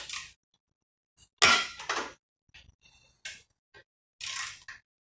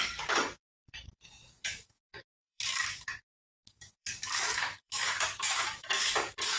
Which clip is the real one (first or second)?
first